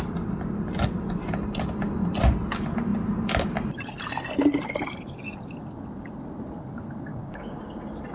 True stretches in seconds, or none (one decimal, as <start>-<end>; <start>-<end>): 0.0-7.1; 7.6-8.1